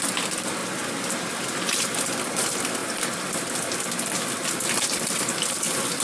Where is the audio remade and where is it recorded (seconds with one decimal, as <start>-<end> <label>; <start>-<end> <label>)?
0.0-6.0 recorded